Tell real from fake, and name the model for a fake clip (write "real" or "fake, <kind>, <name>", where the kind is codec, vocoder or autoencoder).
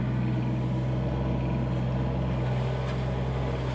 real